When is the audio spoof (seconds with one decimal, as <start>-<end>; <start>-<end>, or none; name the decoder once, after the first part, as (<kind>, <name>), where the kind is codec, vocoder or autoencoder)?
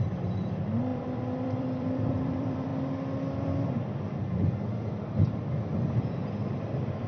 0.0-2.7 (vocoder, BigVGAN v2); 5.2-7.1